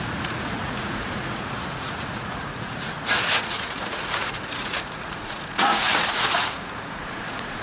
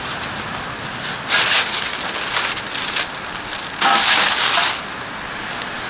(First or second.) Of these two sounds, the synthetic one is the first